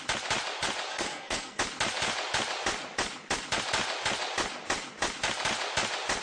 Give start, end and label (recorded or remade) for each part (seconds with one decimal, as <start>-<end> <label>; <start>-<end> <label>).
0.0-0.9 recorded; 0.9-1.6 remade; 1.6-6.2 recorded